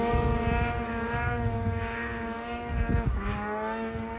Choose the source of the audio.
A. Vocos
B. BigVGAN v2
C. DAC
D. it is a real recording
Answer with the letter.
C